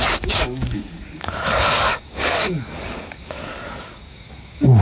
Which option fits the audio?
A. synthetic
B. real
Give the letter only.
A